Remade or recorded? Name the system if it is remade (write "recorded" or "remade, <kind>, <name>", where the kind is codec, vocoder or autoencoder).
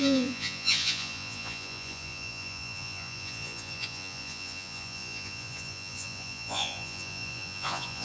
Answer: remade, vocoder, Vocos